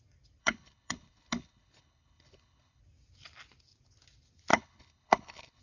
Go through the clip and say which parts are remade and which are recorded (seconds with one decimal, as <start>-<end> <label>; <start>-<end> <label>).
0.0-0.4 recorded; 0.4-2.8 remade; 2.8-4.5 recorded; 4.5-5.6 remade